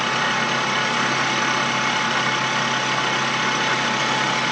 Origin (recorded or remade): recorded